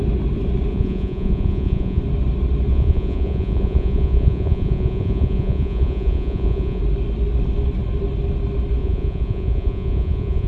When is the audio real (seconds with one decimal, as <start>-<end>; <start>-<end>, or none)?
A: 0.0-0.7; 2.0-2.7; 6.8-8.8